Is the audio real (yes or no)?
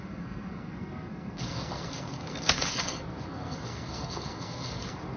no